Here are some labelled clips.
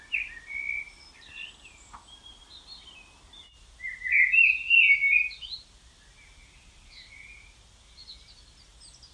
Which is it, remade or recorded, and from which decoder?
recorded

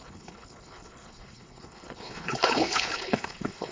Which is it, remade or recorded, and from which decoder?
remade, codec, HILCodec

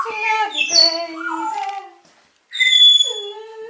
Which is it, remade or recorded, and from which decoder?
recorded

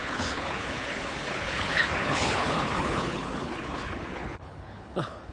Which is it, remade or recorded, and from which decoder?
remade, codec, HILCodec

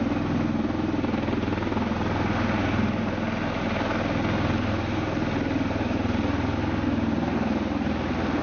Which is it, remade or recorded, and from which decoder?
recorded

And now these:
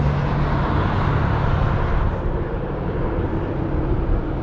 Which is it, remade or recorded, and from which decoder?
recorded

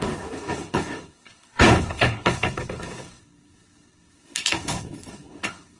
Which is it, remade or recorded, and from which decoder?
remade, codec, HILCodec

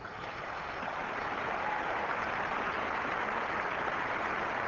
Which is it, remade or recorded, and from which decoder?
recorded